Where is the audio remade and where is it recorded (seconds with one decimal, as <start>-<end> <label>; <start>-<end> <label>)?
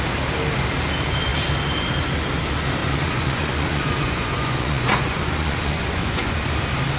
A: 0.0-2.8 recorded; 2.8-6.5 remade; 6.5-7.0 recorded